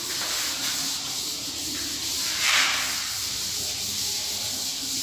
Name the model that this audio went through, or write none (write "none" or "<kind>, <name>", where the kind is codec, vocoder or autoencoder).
vocoder, BigVGAN v2